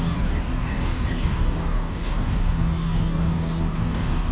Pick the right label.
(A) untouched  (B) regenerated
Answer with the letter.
B